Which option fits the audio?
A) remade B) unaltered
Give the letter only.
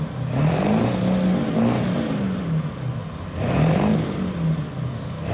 B